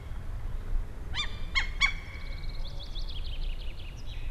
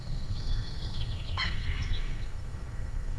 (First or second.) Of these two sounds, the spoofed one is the second